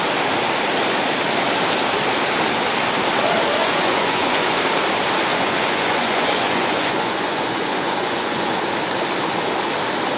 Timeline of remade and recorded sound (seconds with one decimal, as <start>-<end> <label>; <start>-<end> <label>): 0.0-3.6 recorded; 3.6-4.6 remade; 4.6-5.3 recorded; 5.3-8.6 remade; 8.6-10.2 recorded